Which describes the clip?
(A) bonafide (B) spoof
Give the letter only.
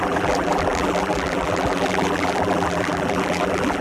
B